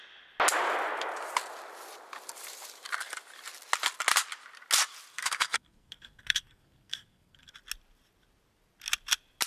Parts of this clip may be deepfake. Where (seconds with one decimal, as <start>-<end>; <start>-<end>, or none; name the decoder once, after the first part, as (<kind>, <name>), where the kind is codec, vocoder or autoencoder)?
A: 5.1-7.5 (codec, SNAC)